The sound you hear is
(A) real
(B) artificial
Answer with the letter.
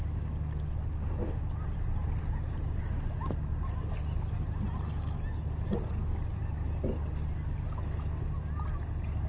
A